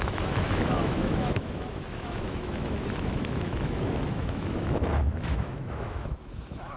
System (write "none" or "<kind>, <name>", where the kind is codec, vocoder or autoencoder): autoencoder, DAC-VAE